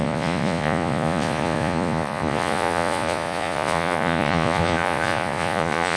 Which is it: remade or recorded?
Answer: remade